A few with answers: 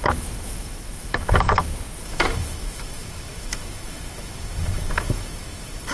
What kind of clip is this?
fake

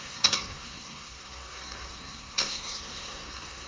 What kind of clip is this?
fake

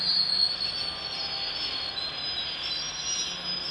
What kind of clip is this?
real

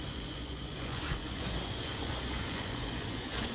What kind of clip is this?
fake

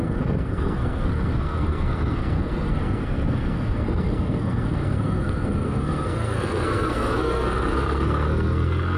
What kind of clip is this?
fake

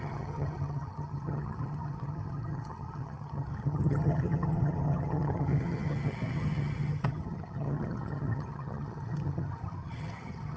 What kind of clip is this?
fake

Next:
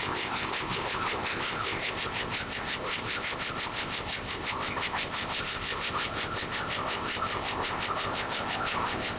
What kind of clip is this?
fake